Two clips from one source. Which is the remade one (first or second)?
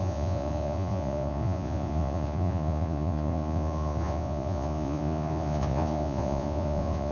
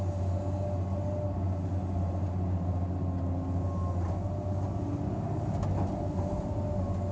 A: first